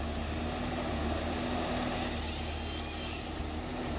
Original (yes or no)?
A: yes